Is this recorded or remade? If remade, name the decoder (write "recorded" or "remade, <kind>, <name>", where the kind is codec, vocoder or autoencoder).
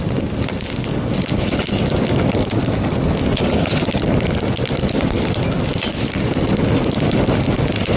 recorded